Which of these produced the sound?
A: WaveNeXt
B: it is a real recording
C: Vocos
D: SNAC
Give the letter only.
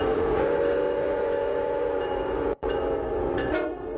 C